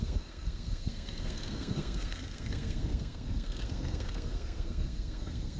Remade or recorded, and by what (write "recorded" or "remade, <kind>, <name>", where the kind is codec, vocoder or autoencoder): remade, codec, SNAC